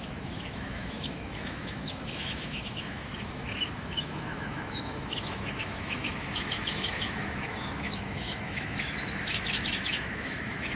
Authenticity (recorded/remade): remade